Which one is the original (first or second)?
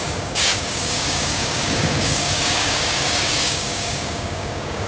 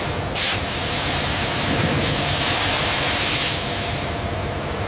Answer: second